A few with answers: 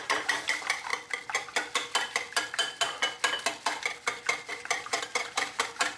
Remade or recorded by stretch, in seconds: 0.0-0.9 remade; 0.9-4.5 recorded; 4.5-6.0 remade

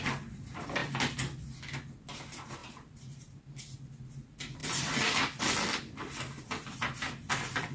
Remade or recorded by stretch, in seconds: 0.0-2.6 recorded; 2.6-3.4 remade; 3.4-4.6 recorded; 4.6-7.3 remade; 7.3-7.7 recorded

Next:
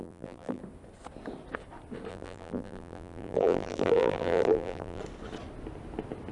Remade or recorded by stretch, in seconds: 0.0-0.6 remade; 0.6-2.1 recorded; 2.1-5.0 remade; 5.0-6.3 recorded